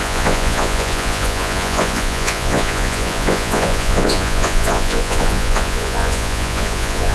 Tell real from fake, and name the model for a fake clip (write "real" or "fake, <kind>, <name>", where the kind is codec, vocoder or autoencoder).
fake, vocoder, Vocos